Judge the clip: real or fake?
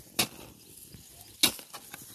real